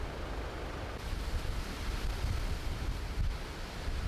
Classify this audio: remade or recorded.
recorded